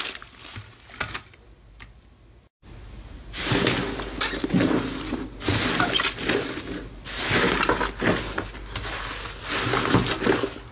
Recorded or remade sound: recorded